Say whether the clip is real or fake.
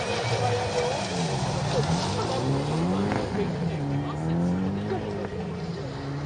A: real